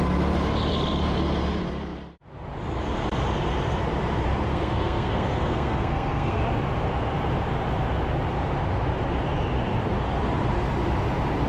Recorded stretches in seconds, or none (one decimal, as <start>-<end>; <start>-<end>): 0.0-4.5; 6.4-11.5